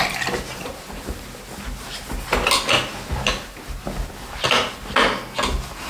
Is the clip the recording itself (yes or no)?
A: yes